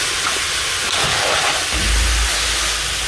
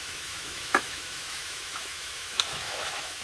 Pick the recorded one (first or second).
first